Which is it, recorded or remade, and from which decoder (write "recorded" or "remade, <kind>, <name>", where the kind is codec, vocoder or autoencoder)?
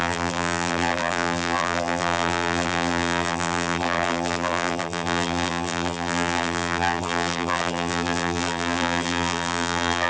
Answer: remade, vocoder, BigVGAN v2